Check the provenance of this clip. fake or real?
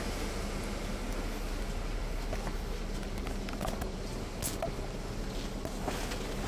real